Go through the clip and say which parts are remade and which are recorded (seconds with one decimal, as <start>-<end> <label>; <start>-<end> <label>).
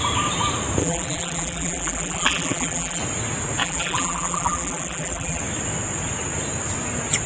0.0-0.8 recorded; 0.8-3.0 remade; 3.0-3.6 recorded; 3.6-5.4 remade; 5.4-7.3 recorded